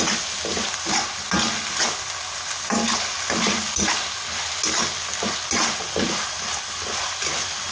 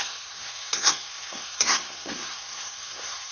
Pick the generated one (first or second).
second